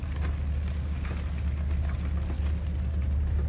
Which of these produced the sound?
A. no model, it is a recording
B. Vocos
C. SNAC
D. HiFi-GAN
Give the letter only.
A